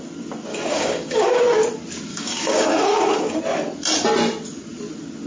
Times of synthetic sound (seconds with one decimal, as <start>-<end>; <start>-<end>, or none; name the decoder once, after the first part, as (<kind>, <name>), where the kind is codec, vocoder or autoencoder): 0.5-1.4 (codec, DAC); 2.1-3.4